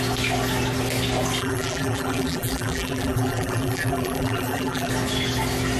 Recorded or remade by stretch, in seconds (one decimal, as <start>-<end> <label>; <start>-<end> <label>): 0.0-1.4 recorded; 1.4-4.9 remade; 4.9-5.8 recorded